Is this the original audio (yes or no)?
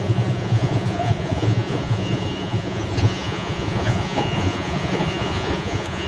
no